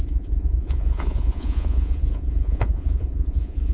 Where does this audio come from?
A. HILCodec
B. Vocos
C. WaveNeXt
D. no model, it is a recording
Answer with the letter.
B